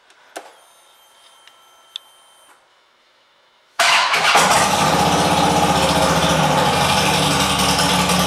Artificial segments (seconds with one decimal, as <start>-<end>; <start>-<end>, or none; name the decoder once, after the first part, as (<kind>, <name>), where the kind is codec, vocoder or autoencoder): 2.7-4.2 (autoencoder, DAC-VAE)